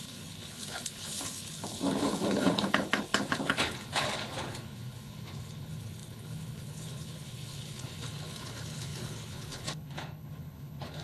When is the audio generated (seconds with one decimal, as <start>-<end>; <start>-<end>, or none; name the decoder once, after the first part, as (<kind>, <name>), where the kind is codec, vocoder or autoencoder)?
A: 0.0-11.0 (codec, HILCodec)